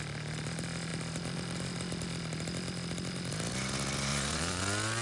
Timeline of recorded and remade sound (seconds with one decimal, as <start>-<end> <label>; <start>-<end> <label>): 0.0-4.1 recorded; 4.1-4.6 remade; 4.6-5.0 recorded